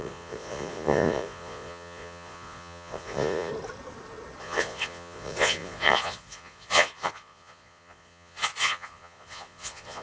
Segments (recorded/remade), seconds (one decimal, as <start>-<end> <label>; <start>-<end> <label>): 0.0-3.5 remade; 3.5-4.4 recorded; 4.4-10.0 remade